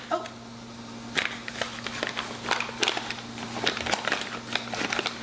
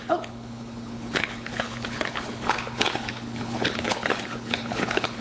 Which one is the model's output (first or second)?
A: second